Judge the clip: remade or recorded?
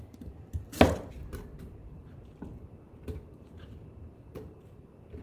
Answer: recorded